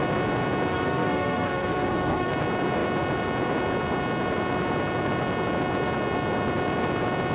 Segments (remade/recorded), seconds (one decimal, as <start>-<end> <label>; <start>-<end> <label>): 0.0-0.7 recorded; 0.7-2.3 remade; 2.3-7.3 recorded